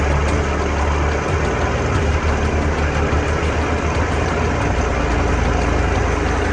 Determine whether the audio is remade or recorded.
recorded